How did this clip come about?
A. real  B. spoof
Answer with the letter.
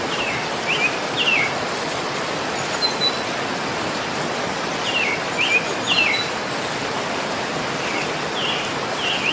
A